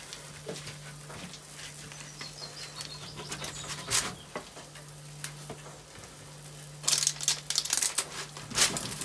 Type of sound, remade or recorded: recorded